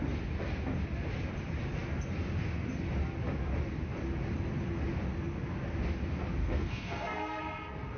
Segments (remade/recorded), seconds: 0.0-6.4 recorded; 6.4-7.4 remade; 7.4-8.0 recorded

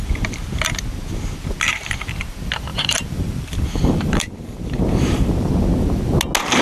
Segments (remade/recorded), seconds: 0.0-2.7 recorded; 2.7-5.5 remade; 5.5-6.6 recorded

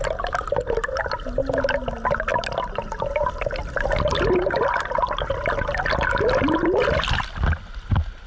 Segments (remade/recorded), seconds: 0.0-8.3 recorded

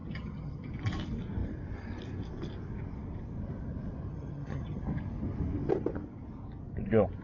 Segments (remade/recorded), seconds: 0.0-0.7 remade; 0.7-4.1 recorded; 4.1-4.8 remade; 4.8-7.2 recorded

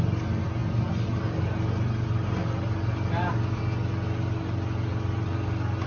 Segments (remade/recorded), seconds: 0.0-5.9 recorded

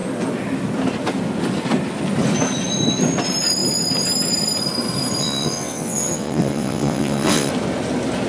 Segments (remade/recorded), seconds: 0.0-5.2 recorded; 5.2-7.5 remade; 7.5-8.3 recorded